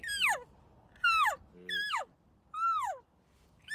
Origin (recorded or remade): recorded